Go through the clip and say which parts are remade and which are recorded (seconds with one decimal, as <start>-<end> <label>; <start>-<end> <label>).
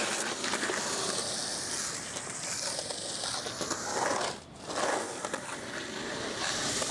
0.0-6.9 recorded